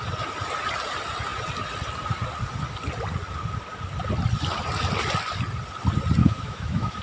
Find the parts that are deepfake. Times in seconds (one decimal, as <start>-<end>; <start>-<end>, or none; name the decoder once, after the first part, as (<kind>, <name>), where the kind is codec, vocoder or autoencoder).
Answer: 6.2-7.0 (autoencoder, DAC-VAE)